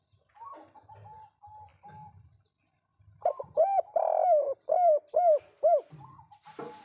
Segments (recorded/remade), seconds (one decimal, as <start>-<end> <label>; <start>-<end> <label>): 0.0-6.8 recorded